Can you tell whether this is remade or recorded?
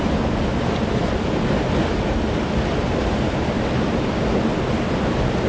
recorded